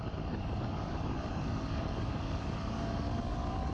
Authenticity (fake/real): fake